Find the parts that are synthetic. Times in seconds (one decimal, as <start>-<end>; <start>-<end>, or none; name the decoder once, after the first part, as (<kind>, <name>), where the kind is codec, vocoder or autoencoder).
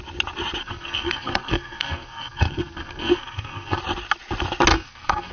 0.6-3.8 (codec, SNAC); 4.7-5.3